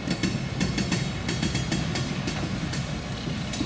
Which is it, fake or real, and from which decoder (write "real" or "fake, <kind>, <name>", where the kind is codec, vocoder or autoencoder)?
real